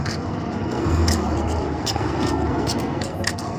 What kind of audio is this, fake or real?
fake